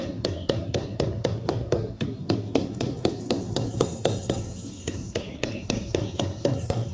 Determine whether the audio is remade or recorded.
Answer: remade